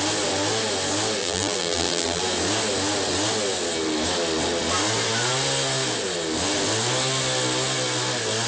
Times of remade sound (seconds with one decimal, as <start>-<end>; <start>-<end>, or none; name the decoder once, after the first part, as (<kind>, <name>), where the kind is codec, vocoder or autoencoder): 1.2-2.2 (vocoder, BigVGAN v2)